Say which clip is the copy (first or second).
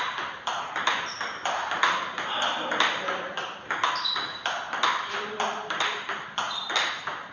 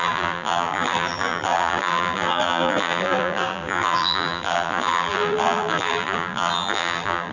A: second